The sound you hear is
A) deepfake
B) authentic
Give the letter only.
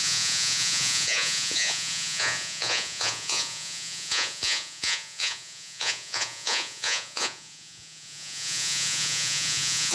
A